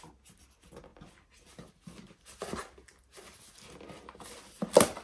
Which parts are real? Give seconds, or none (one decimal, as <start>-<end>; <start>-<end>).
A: 0.0-5.0

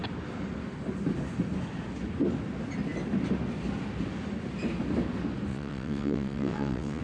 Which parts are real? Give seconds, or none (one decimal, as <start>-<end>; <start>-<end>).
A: 0.0-5.5